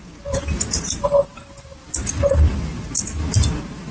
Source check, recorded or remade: recorded